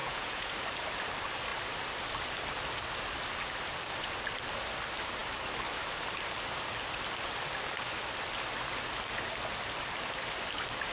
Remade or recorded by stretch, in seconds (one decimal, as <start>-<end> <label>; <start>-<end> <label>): 0.0-0.5 remade; 0.5-10.9 recorded